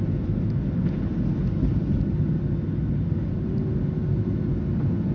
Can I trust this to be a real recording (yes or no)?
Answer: yes